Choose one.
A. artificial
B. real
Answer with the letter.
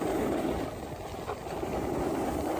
B